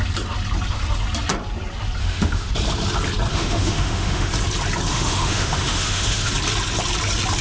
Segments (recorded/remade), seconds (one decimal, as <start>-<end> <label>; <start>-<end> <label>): 0.0-2.0 recorded; 2.0-2.5 remade; 2.5-3.3 recorded; 3.3-4.3 remade; 4.3-4.9 recorded; 4.9-6.3 remade; 6.3-7.4 recorded